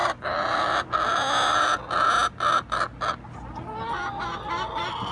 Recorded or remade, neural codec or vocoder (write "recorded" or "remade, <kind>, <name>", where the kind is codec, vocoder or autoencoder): recorded